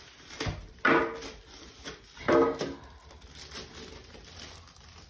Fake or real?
real